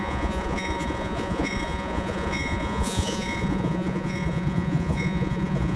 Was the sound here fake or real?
fake